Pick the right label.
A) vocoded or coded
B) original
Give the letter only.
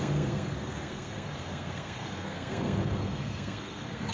A